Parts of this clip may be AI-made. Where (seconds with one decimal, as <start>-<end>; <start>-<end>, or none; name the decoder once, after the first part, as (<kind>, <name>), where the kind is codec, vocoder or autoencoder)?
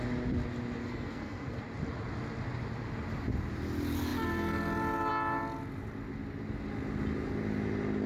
0.8-1.6 (codec, SNAC)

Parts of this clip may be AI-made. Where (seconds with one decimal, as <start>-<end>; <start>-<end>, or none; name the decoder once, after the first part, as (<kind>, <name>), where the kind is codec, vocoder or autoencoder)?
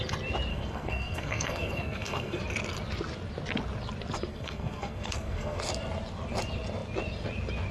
0.5-2.4 (codec, SNAC); 4.3-5.6